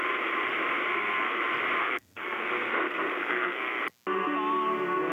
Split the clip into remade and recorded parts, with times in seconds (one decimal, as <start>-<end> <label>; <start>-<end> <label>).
0.0-0.9 recorded; 0.9-1.4 remade; 1.4-1.8 recorded; 1.8-3.8 remade; 3.8-5.1 recorded